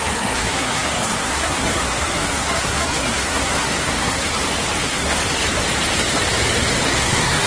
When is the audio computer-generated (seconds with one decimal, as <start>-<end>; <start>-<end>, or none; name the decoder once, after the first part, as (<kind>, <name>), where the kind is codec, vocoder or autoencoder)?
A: 0.0-4.3 (codec, SNAC); 4.8-5.2; 7.0-7.5